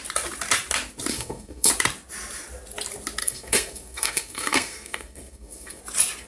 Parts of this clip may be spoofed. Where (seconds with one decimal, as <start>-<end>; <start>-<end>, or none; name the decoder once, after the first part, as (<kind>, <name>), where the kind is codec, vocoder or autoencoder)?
1.1-1.7 (codec, SNAC); 3.2-5.8